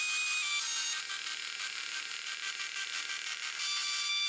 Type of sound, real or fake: real